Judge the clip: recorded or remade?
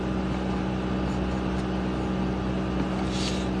recorded